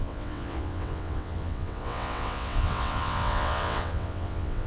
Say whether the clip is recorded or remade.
remade